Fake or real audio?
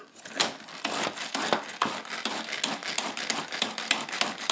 real